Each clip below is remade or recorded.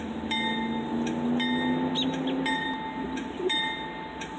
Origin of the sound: recorded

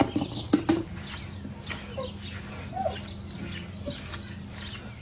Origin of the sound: recorded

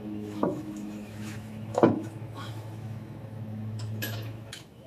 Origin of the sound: remade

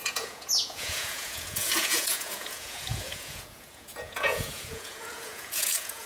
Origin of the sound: remade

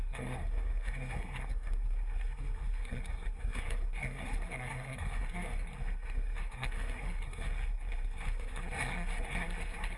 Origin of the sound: remade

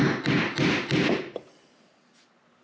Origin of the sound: recorded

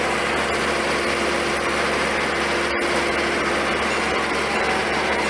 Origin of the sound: recorded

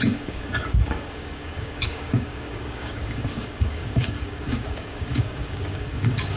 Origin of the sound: remade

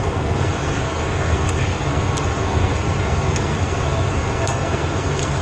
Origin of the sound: remade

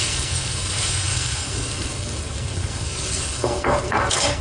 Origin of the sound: remade